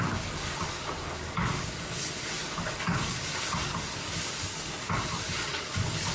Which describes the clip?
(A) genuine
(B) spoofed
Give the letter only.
B